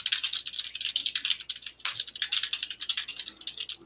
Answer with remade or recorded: recorded